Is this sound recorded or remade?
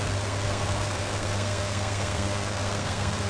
remade